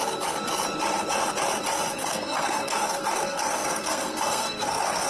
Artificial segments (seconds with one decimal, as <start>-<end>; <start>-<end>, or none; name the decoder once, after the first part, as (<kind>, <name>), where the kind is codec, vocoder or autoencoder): 1.9-5.1 (codec, SNAC)